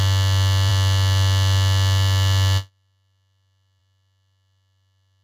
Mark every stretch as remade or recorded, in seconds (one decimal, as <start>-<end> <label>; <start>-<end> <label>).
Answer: 0.0-5.2 recorded